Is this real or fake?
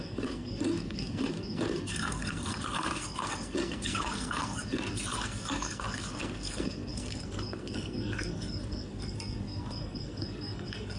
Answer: fake